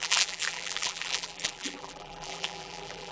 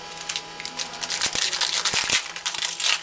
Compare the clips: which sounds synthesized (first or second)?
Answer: first